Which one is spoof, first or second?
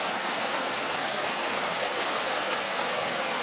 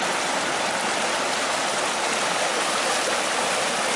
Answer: first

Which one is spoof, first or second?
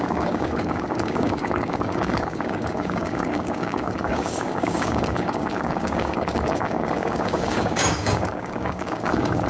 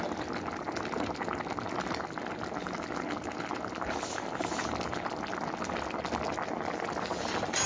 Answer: first